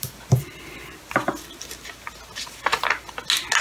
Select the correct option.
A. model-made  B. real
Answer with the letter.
B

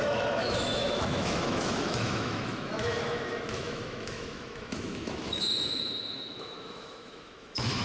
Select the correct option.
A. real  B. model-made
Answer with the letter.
B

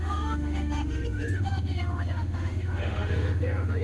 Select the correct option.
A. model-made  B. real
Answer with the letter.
A